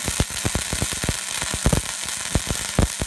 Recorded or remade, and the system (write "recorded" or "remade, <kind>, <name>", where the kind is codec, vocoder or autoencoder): recorded